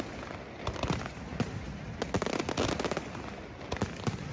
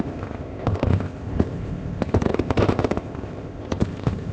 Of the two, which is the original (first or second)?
first